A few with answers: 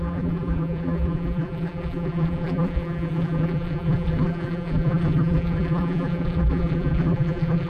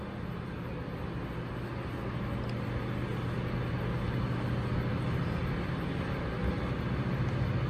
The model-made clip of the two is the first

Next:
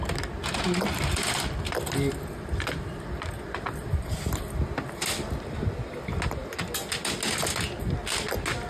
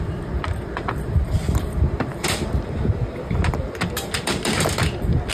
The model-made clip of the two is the second